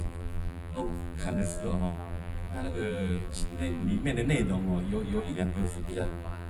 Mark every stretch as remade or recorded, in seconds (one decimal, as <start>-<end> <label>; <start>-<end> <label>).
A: 0.0-4.0 remade; 4.0-5.2 recorded; 5.2-6.5 remade